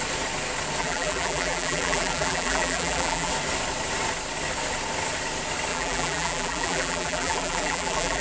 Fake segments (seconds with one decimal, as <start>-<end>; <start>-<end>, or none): 0.8-3.3; 5.7-8.2